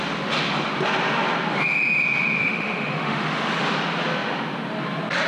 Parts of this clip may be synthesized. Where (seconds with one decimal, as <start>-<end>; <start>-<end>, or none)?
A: 2.4-3.5